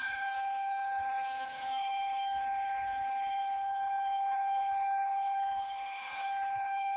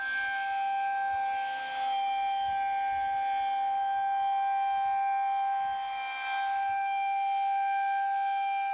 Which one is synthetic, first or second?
first